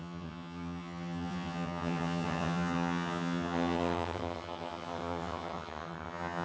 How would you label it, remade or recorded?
remade